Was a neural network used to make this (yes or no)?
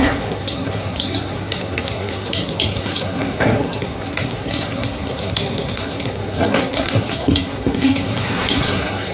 yes